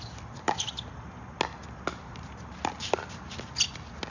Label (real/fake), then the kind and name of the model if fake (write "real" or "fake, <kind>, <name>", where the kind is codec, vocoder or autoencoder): real